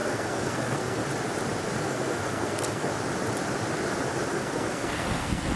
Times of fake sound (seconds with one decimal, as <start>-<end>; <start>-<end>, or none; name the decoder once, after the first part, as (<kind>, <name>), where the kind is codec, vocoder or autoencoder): 0.0-1.0 (codec, SNAC); 1.8-2.9; 4.3-5.6